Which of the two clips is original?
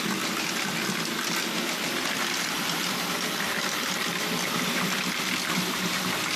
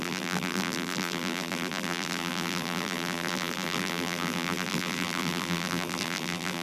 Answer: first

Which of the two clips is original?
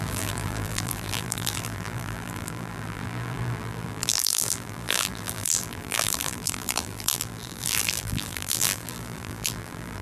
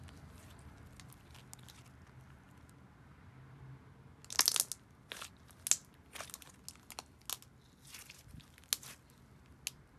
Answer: second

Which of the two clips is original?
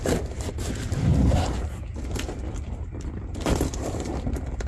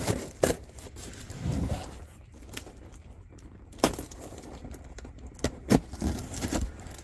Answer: first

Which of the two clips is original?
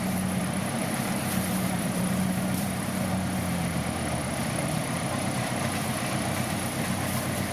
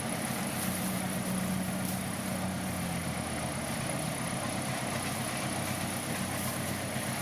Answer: second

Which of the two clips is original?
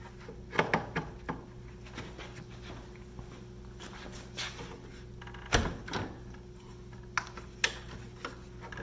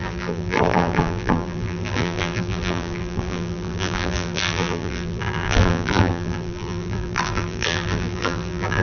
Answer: first